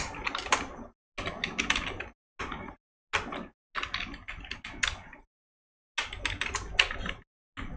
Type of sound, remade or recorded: recorded